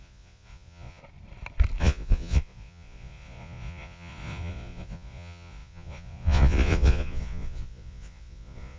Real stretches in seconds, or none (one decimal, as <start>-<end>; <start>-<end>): 1.0-1.8